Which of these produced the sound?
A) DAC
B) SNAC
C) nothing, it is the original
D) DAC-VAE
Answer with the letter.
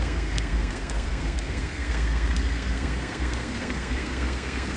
B